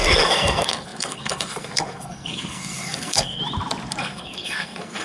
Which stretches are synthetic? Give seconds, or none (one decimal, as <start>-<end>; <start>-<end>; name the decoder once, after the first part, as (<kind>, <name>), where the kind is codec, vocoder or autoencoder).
0.0-3.4 (codec, SNAC); 4.0-5.0

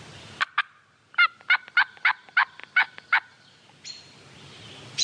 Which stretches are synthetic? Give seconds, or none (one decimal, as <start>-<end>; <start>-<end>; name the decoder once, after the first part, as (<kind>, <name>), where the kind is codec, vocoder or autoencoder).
none